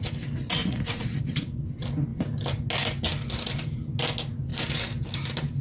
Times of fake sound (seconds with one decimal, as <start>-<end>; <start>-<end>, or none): 0.6-1.2